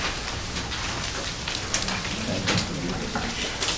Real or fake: real